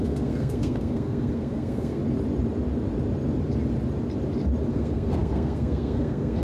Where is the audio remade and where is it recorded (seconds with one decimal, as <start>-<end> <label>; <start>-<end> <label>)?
0.0-2.0 remade; 2.0-4.7 recorded; 4.7-6.4 remade